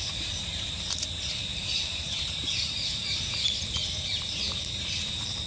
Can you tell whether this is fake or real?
fake